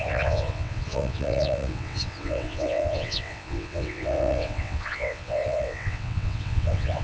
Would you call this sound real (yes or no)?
no